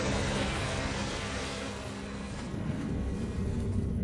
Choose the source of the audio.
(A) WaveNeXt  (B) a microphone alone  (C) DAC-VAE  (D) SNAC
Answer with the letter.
D